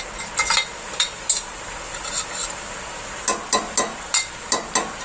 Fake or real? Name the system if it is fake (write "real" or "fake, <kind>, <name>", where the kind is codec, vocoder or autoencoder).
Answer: real